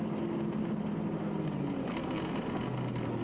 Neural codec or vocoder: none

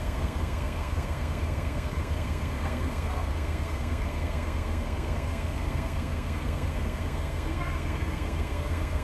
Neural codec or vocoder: codec, SNAC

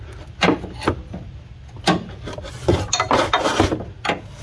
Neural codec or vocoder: none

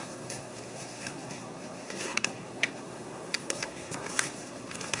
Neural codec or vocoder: codec, SNAC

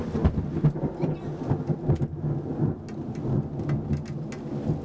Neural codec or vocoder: none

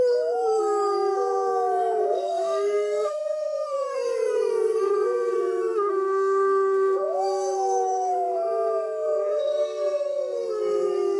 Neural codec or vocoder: codec, SNAC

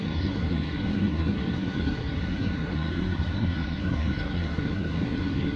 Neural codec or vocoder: codec, SNAC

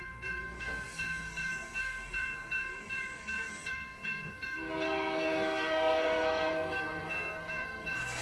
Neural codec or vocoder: codec, SNAC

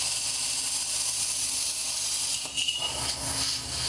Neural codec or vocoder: none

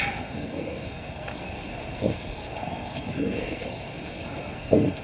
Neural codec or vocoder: codec, SNAC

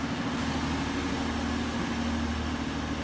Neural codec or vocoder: none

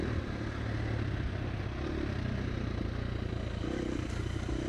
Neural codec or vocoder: none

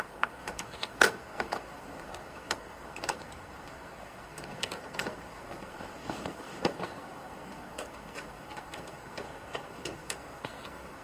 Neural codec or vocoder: codec, SNAC